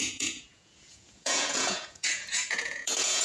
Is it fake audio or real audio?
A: fake